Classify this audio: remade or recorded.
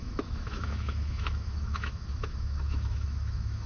remade